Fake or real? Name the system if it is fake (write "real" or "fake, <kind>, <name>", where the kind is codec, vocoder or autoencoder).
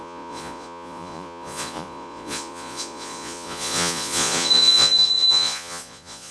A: fake, vocoder, Vocos